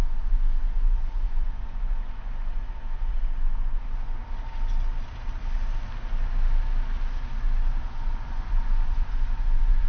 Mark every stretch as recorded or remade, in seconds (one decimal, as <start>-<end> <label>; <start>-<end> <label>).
0.0-4.2 remade; 4.2-7.8 recorded; 7.8-9.9 remade